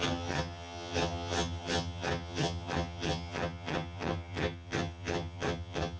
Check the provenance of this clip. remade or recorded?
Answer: remade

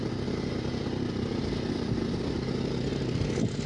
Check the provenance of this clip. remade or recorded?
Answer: recorded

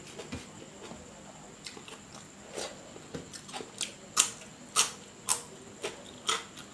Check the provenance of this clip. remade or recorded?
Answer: recorded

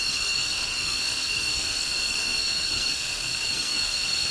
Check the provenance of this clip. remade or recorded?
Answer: remade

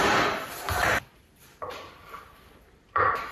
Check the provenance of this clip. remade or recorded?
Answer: remade